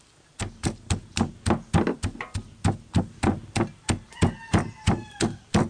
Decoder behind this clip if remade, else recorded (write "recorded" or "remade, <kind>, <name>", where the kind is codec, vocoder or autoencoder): recorded